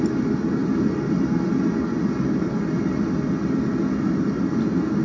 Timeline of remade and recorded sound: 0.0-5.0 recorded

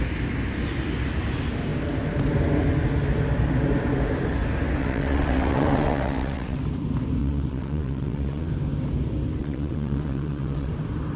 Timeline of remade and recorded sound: 0.0-4.8 recorded; 4.8-6.6 remade; 6.6-7.2 recorded; 7.2-8.5 remade; 8.5-9.4 recorded; 9.4-10.7 remade; 10.7-11.2 recorded

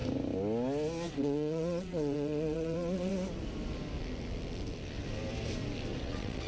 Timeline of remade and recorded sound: 0.0-1.1 recorded; 1.1-3.1 remade; 3.1-6.0 recorded; 6.0-6.5 remade

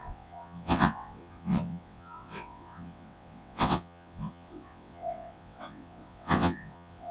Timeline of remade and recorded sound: 0.0-7.1 remade